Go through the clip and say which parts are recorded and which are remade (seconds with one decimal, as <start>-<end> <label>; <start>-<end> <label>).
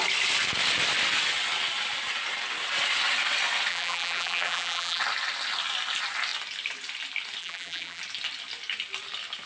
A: 0.0-3.7 recorded; 3.7-5.0 remade; 5.0-7.4 recorded; 7.4-8.0 remade; 8.0-9.5 recorded